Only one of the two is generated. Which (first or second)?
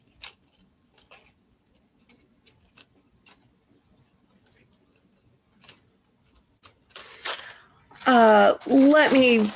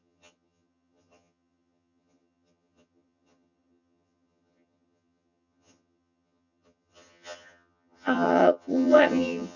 second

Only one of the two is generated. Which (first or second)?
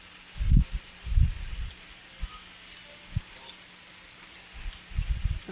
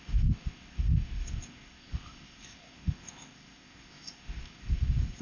second